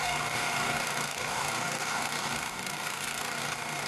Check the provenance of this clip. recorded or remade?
remade